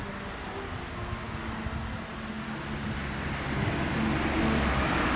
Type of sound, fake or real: real